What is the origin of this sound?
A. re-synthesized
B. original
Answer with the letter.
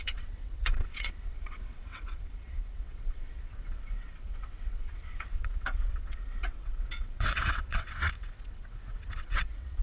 A